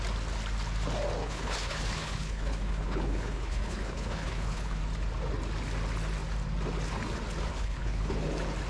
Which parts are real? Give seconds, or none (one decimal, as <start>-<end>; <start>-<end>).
0.0-1.2; 4.8-7.5; 8.1-8.7

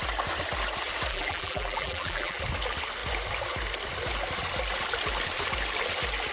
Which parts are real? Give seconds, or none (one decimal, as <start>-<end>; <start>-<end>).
0.0-1.1; 2.4-6.3

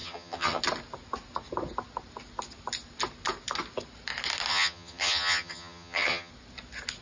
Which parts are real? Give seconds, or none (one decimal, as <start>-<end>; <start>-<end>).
0.6-4.5; 6.3-7.0